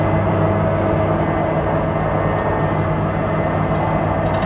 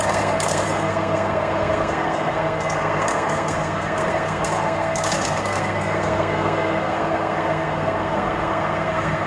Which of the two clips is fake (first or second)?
second